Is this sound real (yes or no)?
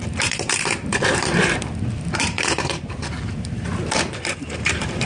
no